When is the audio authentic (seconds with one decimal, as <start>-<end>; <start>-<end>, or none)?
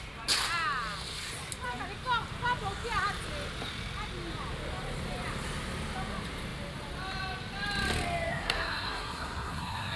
0.0-8.3